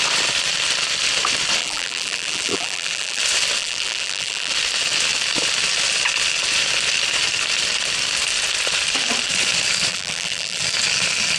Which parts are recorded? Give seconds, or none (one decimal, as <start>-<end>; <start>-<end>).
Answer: 0.0-1.6; 3.2-3.6; 4.5-9.9; 10.6-11.4